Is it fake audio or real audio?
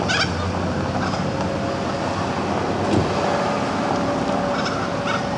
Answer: real